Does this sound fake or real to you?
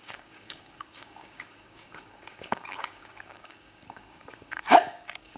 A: fake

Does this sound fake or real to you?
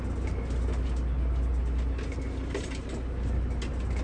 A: real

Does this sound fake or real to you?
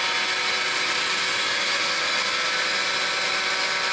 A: real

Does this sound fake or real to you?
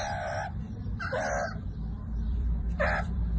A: fake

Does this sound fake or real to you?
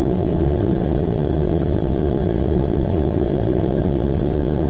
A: fake